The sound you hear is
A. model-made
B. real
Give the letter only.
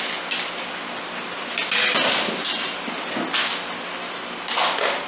B